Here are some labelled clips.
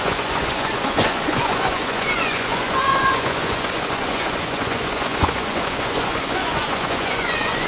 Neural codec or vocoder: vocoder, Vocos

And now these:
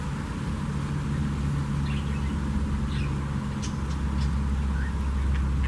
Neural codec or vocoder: none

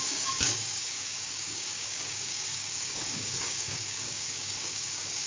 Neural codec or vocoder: codec, DAC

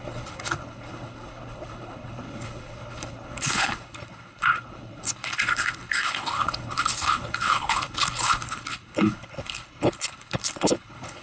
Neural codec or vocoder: codec, HILCodec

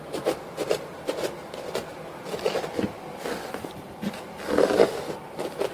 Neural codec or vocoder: vocoder, BigVGAN v2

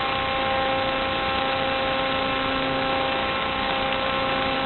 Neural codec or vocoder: none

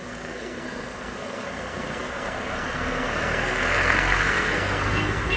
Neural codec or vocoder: codec, SNAC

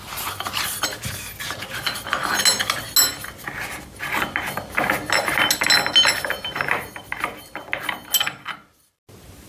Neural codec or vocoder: none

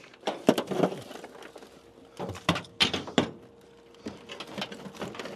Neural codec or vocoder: none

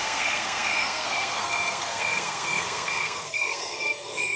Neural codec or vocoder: codec, SNAC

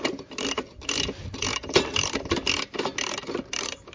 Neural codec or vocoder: none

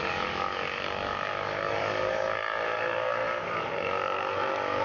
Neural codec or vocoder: codec, DAC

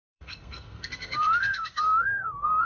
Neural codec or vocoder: codec, SNAC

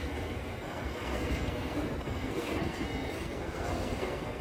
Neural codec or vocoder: codec, SNAC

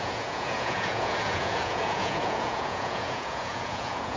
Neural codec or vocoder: vocoder, Vocos